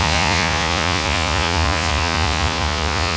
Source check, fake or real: fake